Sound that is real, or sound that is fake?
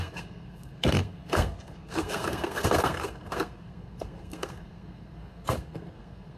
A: fake